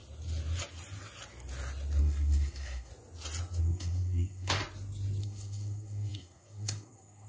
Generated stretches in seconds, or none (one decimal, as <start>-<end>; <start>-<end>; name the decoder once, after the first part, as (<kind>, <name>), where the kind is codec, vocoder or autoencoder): 2.0-2.9 (codec, SNAC); 3.6-4.6; 5.2-7.3